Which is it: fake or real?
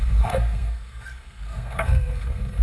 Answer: fake